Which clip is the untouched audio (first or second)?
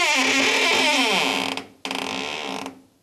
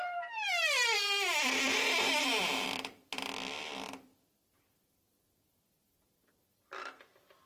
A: first